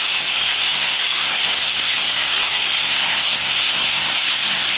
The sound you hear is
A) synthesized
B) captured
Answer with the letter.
A